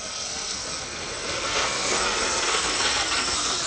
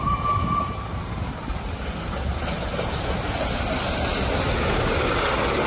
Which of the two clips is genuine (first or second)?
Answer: second